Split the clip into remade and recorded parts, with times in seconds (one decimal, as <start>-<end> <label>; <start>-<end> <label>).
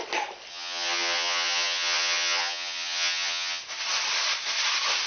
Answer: 0.0-0.5 recorded; 0.5-3.6 remade; 3.6-5.1 recorded